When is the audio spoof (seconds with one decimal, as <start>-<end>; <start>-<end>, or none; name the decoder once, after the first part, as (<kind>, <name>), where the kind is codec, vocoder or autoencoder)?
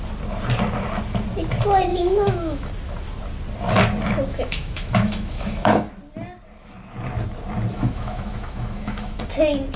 1.9-2.7 (autoencoder, DAC-VAE); 4.3-5.9; 7.7-9.2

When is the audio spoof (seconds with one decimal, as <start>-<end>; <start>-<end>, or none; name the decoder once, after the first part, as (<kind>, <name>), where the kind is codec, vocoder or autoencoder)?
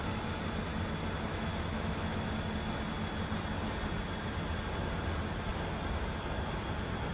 1.3-2.3 (autoencoder, DAC-VAE)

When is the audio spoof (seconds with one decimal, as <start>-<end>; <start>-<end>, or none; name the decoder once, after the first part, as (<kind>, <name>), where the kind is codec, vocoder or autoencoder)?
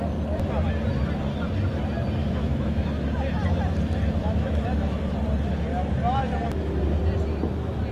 2.2-2.9 (autoencoder, DAC-VAE); 4.2-5.0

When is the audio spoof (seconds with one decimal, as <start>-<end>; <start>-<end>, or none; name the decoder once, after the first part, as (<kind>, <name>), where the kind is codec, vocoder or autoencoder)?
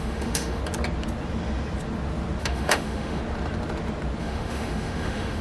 0.0-0.6 (autoencoder, DAC-VAE); 2.4-3.2; 4.2-5.4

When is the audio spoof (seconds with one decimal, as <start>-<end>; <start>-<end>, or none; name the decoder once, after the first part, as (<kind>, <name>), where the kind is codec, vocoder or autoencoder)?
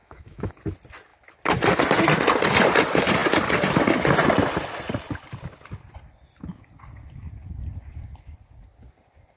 0.0-0.5 (autoencoder, DAC-VAE)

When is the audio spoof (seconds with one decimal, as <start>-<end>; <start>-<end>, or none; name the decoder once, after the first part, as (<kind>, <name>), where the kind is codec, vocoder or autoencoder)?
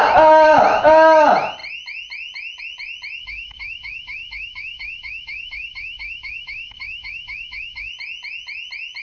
3.2-7.9 (autoencoder, DAC-VAE)